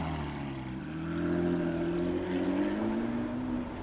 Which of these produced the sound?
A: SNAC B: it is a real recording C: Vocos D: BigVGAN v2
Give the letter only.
B